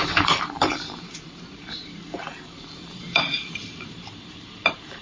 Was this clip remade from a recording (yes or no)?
yes